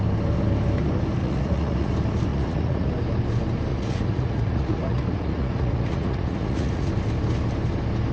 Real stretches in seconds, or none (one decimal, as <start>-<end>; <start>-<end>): 0.0-1.2; 1.9-2.3; 2.9-3.7; 6.9-8.1